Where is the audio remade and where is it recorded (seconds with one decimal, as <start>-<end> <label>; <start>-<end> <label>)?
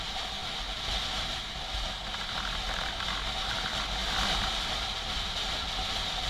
0.0-0.4 recorded; 0.4-1.9 remade; 1.9-4.0 recorded; 4.0-6.3 remade